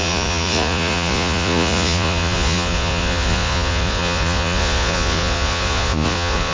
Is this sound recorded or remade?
remade